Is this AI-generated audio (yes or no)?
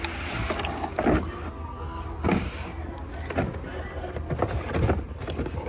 no